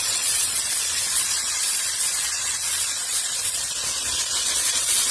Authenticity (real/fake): fake